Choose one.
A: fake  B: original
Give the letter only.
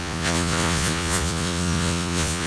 A